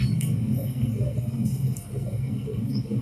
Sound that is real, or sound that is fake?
fake